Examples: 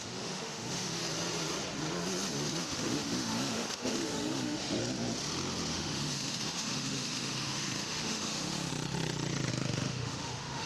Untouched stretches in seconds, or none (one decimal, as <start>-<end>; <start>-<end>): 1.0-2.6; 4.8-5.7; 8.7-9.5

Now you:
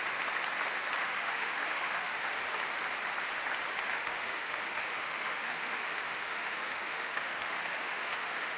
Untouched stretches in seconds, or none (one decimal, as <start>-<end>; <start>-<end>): 0.0-1.0; 2.4-3.9

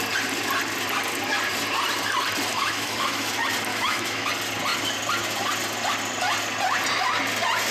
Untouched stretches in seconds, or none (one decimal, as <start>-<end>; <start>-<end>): 0.0-2.5; 3.3-3.7; 4.3-7.7

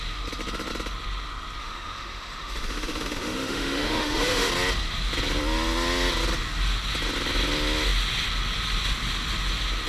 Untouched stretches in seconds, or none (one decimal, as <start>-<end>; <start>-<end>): 0.0-1.6; 4.5-9.9

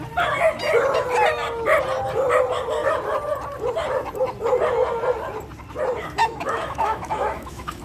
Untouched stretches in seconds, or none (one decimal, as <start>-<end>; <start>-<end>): 0.0-6.2

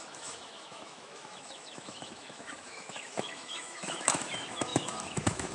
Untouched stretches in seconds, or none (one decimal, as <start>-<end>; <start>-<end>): none

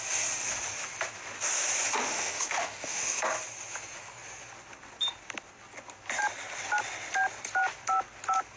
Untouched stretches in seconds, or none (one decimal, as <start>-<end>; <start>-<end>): 0.0-2.1; 3.2-8.6

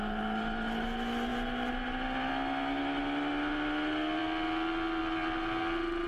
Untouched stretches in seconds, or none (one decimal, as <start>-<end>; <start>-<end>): 0.0-6.1